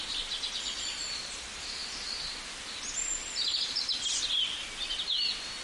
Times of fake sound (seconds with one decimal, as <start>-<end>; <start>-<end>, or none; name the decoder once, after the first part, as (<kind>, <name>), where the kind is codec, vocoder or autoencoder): none